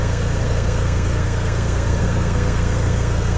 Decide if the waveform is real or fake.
fake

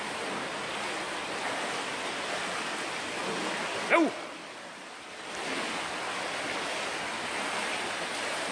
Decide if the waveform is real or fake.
real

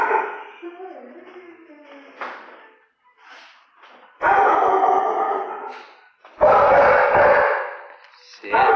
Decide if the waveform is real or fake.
real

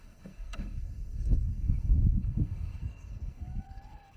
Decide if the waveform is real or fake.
fake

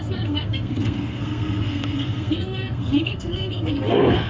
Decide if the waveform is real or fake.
fake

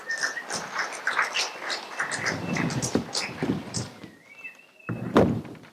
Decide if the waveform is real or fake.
real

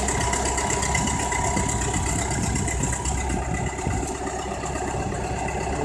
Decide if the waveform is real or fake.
real